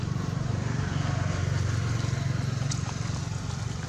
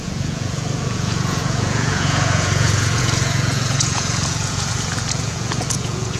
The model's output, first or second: second